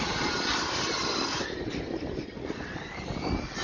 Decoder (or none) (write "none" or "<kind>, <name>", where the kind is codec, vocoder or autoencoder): none